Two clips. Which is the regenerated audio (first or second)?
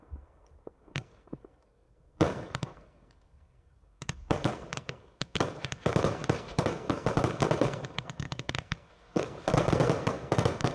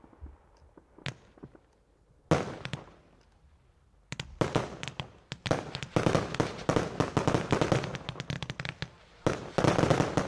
first